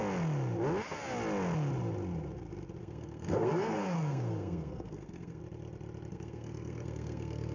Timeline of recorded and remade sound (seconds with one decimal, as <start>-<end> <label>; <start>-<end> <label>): 0.0-2.8 recorded; 2.8-5.4 remade; 5.4-6.1 recorded; 6.1-7.5 remade